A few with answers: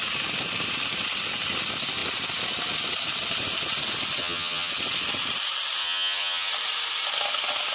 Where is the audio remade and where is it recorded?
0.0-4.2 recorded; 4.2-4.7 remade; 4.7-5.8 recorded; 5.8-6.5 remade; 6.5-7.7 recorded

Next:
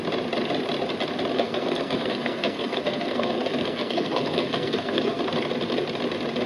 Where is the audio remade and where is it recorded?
0.0-1.3 recorded; 1.3-5.2 remade; 5.2-6.5 recorded